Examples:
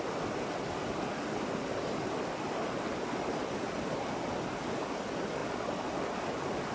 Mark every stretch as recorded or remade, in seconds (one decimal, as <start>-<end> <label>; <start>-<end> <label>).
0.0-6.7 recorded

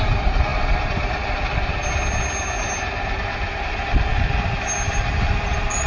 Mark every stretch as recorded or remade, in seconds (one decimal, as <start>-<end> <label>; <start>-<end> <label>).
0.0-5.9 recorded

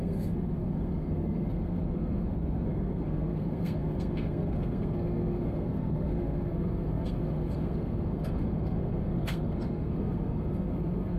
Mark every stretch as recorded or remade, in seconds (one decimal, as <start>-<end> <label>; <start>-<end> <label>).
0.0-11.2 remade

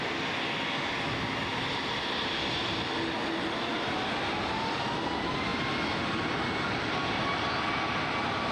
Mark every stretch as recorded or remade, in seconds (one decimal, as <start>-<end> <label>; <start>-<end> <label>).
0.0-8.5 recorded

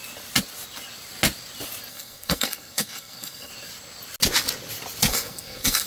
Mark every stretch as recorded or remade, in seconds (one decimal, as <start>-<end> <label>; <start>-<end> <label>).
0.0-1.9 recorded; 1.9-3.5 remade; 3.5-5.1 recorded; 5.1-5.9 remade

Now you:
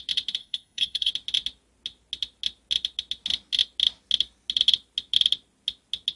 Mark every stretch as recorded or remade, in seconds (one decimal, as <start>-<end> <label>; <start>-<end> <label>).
0.0-0.4 recorded; 0.4-1.1 remade; 1.1-6.2 recorded